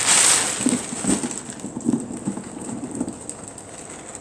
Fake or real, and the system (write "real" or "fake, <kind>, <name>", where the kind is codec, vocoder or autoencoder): real